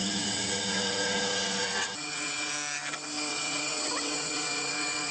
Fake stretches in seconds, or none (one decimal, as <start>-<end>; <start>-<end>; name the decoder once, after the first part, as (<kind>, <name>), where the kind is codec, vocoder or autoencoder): 0.0-2.5 (vocoder, WaveNeXt); 3.3-5.1